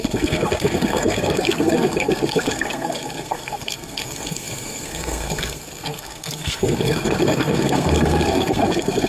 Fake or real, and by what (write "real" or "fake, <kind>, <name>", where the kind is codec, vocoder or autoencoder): fake, codec, SNAC